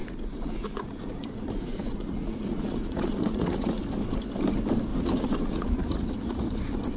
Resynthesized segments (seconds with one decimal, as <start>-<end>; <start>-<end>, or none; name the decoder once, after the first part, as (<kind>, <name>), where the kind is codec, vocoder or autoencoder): 0.0-3.8 (vocoder, Vocos); 4.9-6.6